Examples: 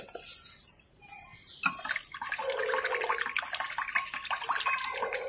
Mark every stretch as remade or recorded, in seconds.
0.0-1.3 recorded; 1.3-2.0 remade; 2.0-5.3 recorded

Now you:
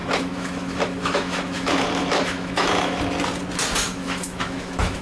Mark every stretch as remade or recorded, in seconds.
0.0-3.0 remade; 3.0-3.8 recorded; 3.8-5.0 remade

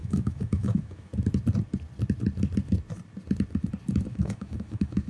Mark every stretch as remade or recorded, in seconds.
0.0-1.1 remade; 1.1-4.1 recorded; 4.1-5.1 remade

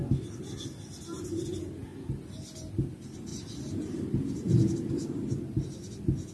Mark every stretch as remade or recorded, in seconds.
0.0-3.3 recorded; 3.3-4.9 remade; 4.9-6.3 recorded

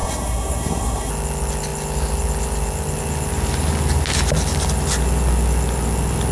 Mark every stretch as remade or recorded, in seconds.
0.0-1.1 remade; 1.1-6.3 recorded

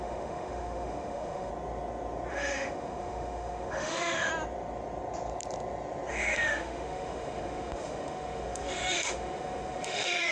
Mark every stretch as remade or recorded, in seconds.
0.0-1.5 remade; 1.5-2.3 recorded; 2.3-4.3 remade; 4.3-6.1 recorded; 6.1-10.3 remade

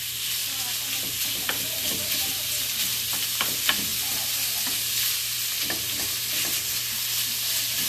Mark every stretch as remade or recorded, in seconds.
0.0-7.9 recorded

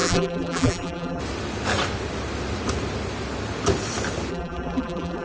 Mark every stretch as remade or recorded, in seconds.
0.0-1.2 remade; 1.2-4.3 recorded; 4.3-5.2 remade